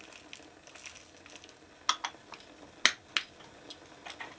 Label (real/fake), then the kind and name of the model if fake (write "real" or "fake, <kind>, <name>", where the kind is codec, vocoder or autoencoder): real